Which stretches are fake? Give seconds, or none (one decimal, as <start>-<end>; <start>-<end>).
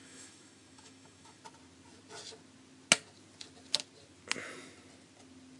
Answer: 0.0-1.4